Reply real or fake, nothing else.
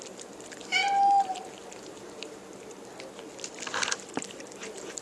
real